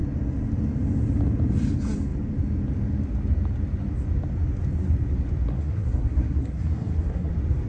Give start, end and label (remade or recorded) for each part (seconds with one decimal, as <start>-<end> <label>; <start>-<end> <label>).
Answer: 0.0-5.5 recorded; 5.5-7.3 remade; 7.3-7.7 recorded